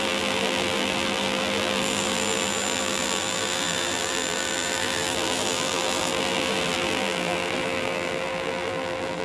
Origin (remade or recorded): remade